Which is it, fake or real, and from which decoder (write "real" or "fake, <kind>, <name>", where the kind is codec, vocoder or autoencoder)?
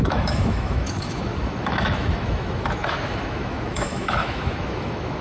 fake, autoencoder, DAC-VAE